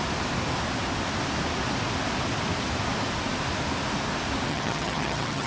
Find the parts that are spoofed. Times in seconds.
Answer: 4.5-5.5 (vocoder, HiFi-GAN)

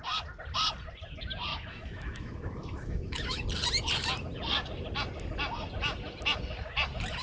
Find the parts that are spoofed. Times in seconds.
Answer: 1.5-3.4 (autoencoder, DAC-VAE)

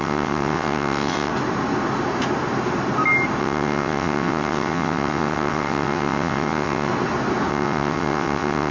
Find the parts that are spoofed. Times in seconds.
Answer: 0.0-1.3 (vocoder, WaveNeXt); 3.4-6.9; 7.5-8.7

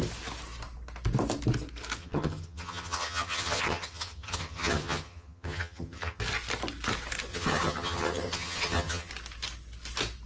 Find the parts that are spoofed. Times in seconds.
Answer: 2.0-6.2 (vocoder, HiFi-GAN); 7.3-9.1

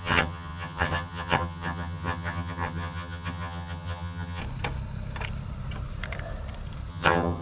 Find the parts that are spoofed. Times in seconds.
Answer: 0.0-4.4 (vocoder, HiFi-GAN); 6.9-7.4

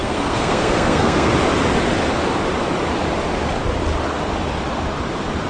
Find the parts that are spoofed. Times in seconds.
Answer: 0.0-1.3 (codec, SNAC)

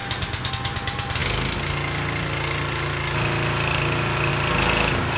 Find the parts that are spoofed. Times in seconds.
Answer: none